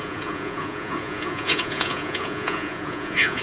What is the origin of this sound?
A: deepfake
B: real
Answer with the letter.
A